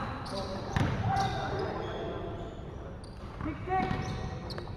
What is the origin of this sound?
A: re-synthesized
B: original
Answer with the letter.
B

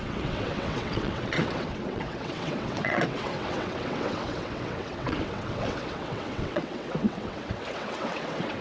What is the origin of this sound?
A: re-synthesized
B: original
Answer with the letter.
A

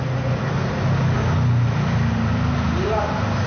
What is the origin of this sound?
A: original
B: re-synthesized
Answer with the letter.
A